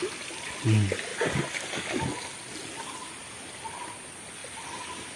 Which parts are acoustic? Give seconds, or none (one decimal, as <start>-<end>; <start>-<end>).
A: 0.0-5.2